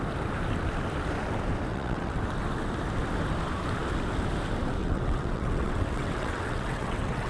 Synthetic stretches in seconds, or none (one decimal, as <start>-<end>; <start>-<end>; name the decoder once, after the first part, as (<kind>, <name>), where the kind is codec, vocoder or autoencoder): 1.7-2.2 (vocoder, WaveNeXt); 4.8-7.3